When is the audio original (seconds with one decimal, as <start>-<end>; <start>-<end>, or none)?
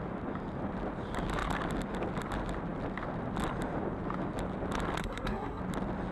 0.0-5.0; 5.6-6.1